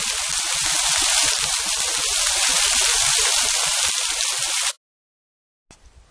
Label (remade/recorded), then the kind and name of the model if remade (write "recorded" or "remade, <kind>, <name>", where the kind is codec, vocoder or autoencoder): recorded